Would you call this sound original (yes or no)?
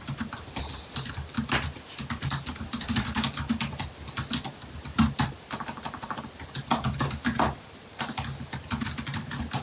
no